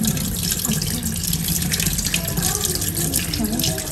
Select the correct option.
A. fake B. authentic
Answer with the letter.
B